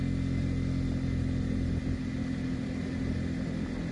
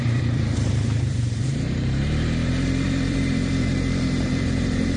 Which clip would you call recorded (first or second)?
first